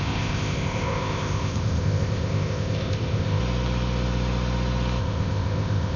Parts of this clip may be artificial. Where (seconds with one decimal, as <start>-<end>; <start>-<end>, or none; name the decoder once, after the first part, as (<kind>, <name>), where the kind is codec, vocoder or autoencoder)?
0.0-3.4 (codec, ZipCodec); 5.0-6.0